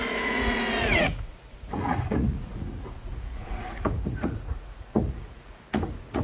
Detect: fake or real fake